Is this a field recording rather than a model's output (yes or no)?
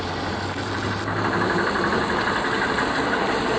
yes